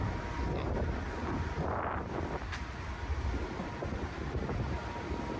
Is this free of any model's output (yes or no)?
yes